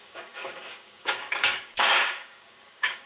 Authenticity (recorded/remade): remade